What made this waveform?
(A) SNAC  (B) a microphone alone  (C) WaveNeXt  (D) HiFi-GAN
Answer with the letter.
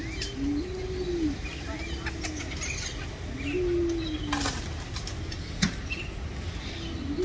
B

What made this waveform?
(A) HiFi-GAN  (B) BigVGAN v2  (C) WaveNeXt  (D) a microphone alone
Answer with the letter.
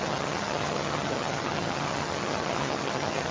A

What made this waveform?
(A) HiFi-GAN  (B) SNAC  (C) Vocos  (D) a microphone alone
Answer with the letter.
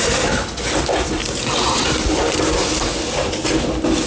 D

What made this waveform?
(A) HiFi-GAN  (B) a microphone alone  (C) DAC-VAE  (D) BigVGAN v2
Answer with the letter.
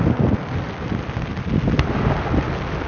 B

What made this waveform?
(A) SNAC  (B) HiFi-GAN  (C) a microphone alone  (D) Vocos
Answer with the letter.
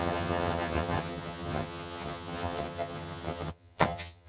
B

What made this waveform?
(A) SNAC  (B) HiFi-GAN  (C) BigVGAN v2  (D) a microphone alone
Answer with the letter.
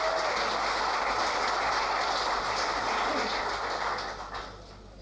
D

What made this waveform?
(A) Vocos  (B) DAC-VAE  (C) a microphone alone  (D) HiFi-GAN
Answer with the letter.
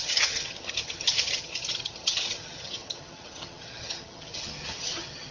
D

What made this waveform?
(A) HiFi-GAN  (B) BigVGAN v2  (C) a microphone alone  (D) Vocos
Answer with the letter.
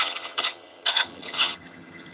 A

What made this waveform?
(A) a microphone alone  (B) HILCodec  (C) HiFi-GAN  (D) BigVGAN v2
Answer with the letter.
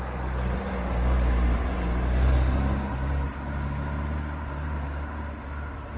A